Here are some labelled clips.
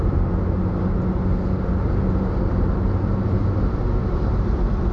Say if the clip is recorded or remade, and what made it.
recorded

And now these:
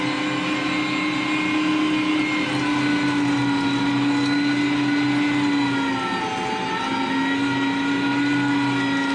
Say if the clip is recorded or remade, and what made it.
recorded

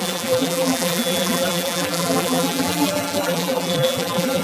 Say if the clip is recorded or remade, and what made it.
remade, vocoder, BigVGAN v2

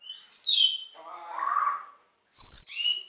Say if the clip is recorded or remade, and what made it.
recorded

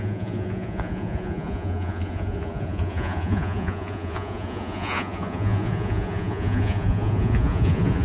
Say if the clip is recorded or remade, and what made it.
remade, vocoder, Vocos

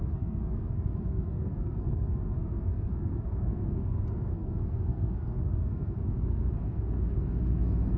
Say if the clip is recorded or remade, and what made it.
remade, codec, SNAC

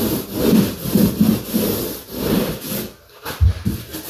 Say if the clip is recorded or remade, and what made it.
recorded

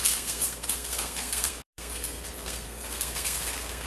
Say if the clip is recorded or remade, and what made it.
remade, codec, SNAC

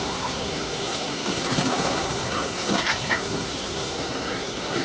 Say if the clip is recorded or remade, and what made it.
remade, codec, SNAC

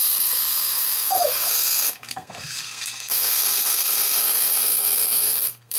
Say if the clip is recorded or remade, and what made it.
remade, codec, SNAC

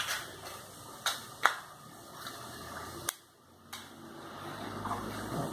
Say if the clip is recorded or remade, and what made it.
recorded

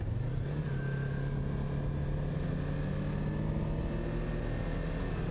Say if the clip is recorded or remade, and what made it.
recorded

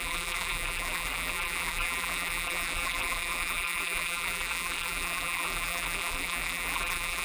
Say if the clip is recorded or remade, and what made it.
remade, vocoder, BigVGAN v2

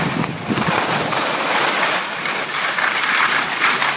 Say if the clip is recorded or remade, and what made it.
recorded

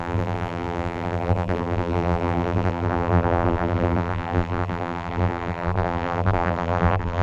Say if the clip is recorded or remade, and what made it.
remade, vocoder, BigVGAN v2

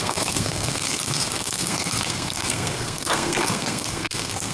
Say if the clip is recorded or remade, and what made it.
remade, codec, SNAC